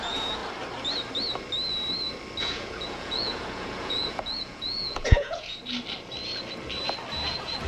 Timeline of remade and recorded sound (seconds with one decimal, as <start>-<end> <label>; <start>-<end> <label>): 0.0-0.4 remade; 0.4-2.4 recorded; 2.4-5.6 remade; 5.6-7.3 recorded; 7.3-7.7 remade